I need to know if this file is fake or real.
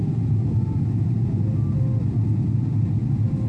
real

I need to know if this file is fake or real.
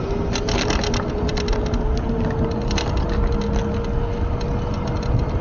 real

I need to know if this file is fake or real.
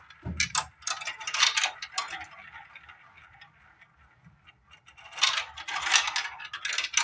real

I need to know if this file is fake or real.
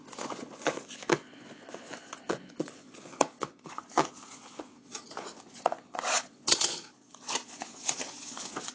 fake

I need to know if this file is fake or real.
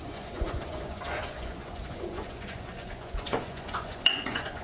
fake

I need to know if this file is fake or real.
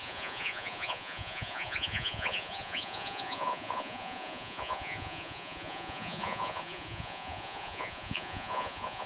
fake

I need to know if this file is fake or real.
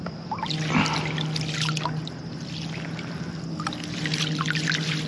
real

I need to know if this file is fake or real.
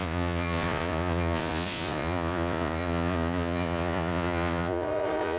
fake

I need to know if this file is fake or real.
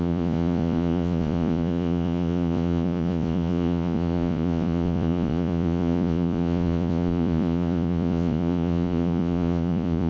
fake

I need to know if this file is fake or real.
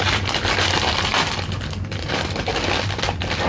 real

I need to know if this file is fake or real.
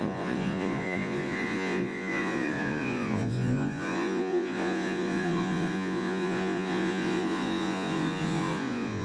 fake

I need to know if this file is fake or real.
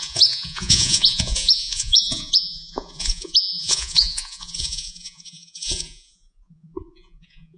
fake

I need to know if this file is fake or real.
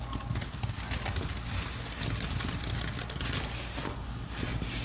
real